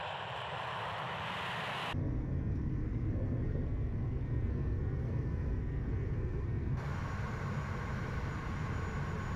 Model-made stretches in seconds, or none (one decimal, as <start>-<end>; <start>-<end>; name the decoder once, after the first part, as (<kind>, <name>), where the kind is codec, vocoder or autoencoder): 2.0-6.9 (codec, SNAC)